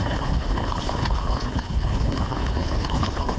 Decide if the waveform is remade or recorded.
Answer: remade